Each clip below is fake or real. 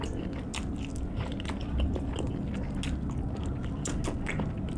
real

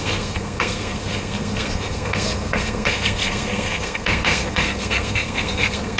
fake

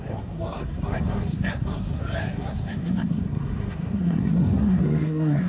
fake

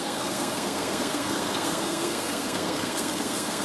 fake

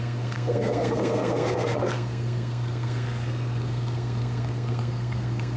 fake